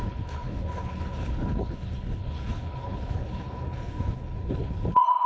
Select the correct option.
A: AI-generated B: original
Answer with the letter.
A